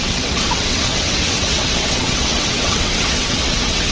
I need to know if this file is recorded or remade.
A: remade